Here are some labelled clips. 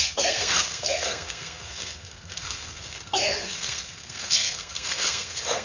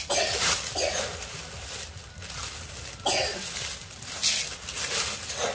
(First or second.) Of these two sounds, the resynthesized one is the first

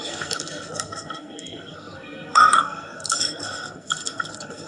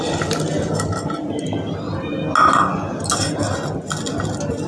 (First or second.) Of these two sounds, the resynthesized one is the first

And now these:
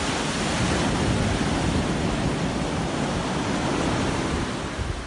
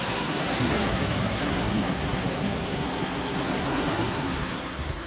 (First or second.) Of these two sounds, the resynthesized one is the second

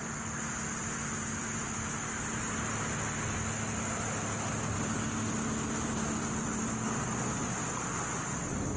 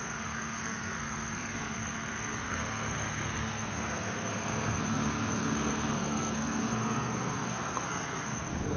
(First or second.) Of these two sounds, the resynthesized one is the second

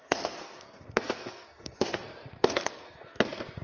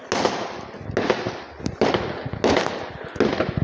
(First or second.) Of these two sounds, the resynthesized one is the first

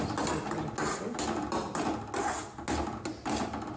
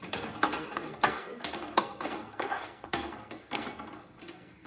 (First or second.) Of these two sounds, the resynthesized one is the second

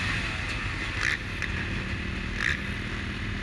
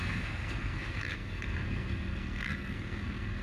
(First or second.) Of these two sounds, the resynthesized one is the second